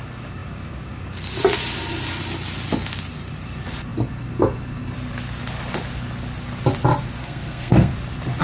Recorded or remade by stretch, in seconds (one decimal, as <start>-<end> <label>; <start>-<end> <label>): 0.0-7.2 recorded; 7.2-7.9 remade; 7.9-8.4 recorded